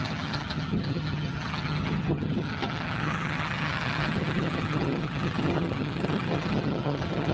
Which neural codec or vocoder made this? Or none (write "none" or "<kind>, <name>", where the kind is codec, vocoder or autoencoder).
vocoder, HiFi-GAN